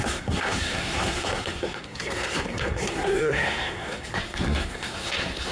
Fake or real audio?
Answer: fake